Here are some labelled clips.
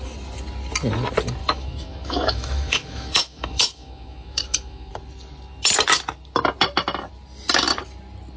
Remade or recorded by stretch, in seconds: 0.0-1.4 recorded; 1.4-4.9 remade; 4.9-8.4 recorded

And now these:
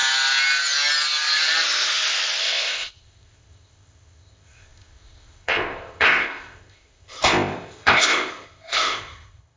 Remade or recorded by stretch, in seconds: 0.0-2.4 recorded; 2.4-9.6 remade

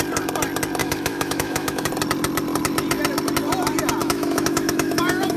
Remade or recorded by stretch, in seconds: 0.0-0.8 recorded; 0.8-1.9 remade; 1.9-4.0 recorded; 4.0-5.4 remade

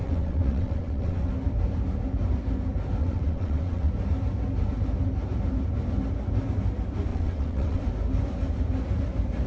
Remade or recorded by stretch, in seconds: 0.0-1.3 remade; 1.3-3.0 recorded; 3.0-3.9 remade; 3.9-7.1 recorded; 7.1-7.8 remade; 7.8-9.5 recorded

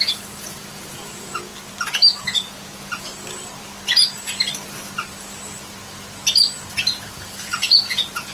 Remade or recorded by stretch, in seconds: 0.0-1.5 remade; 1.5-2.2 recorded; 2.2-3.1 remade; 3.1-7.0 recorded; 7.0-8.3 remade

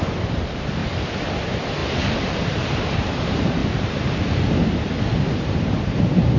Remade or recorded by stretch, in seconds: 0.0-0.8 remade; 0.8-1.4 recorded; 1.4-3.6 remade; 3.6-5.3 recorded; 5.3-6.4 remade